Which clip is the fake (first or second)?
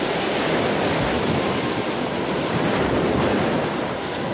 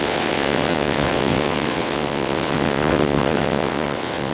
second